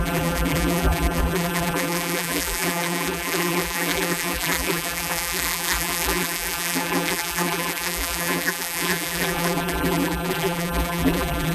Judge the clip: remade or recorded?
remade